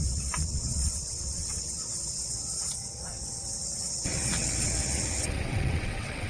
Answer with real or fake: fake